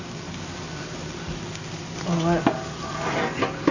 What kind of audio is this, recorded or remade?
recorded